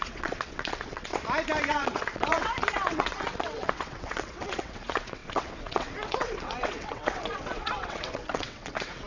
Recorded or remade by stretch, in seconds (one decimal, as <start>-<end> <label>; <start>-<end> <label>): 0.0-1.1 remade; 1.1-1.7 recorded; 1.7-9.1 remade

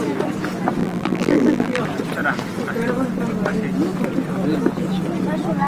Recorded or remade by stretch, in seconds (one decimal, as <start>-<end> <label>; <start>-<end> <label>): 0.0-0.8 recorded; 0.8-1.8 remade; 1.8-5.7 recorded

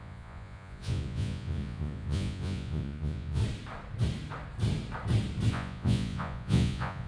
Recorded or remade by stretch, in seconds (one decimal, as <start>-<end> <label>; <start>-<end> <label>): 0.0-3.4 remade; 3.4-5.5 recorded; 5.5-7.1 remade

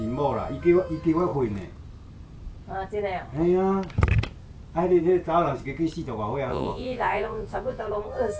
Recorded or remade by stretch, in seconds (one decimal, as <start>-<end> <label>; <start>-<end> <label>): 0.0-6.5 recorded; 6.5-7.8 remade; 7.8-8.4 recorded

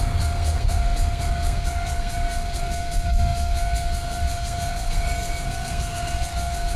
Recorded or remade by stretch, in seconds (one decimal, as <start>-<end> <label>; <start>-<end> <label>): 0.0-6.8 remade

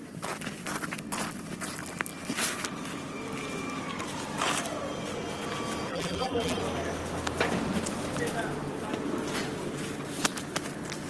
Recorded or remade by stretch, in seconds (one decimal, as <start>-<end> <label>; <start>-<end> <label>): 0.0-5.9 recorded; 5.9-6.6 remade; 6.6-11.1 recorded